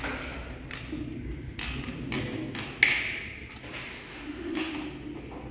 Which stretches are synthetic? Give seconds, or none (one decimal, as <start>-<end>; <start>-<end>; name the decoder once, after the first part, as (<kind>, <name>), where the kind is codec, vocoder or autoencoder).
3.9-4.7 (autoencoder, DAC-VAE)

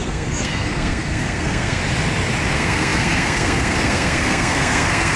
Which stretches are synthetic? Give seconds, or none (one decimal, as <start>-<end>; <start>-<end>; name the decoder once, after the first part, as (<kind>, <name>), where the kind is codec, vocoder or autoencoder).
0.0-1.8 (codec, SNAC); 2.5-5.2

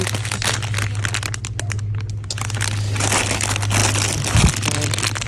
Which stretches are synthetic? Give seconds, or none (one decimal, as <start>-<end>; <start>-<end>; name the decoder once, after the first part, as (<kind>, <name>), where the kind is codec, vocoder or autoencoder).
none

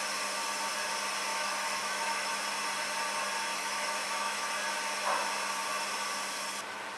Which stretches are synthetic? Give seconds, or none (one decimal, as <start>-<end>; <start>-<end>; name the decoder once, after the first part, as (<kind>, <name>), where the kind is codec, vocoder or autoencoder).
1.3-2.3 (autoencoder, DAC-VAE); 3.5-4.5

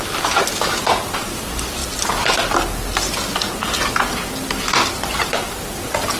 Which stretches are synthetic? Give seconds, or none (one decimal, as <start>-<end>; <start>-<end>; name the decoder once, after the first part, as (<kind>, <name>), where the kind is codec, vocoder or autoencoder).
none

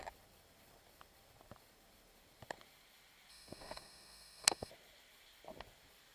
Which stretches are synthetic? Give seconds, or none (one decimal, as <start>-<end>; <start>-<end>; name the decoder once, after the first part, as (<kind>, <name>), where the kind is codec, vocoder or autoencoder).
3.3-4.7 (autoencoder, DAC-VAE)

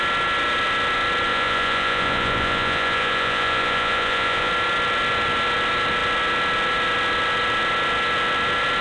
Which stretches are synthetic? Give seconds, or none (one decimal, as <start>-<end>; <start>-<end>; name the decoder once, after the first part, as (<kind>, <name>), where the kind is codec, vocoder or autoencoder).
1.3-4.5 (vocoder, Vocos)

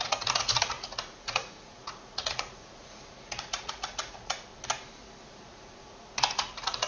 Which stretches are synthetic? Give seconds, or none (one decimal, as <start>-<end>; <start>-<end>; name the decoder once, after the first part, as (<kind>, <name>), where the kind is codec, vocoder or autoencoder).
0.0-4.5 (vocoder, Vocos); 5.3-6.9